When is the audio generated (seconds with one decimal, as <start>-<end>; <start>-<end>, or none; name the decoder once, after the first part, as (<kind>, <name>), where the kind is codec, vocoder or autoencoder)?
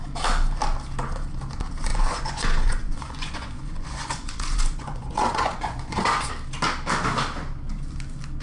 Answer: 1.9-6.3 (vocoder, Vocos)